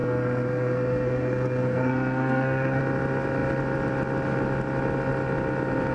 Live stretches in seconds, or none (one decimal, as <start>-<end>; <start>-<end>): 2.8-5.9